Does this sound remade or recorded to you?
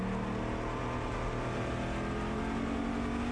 recorded